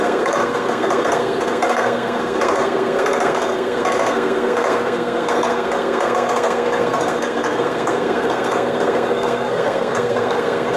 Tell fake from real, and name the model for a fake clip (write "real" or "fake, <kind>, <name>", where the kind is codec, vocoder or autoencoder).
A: fake, codec, SNAC